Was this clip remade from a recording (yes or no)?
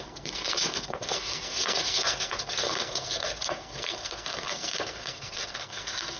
yes